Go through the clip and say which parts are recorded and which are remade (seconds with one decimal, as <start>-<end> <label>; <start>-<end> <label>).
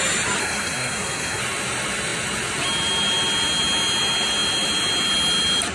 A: 0.0-0.4 recorded; 0.4-1.4 remade; 1.4-5.7 recorded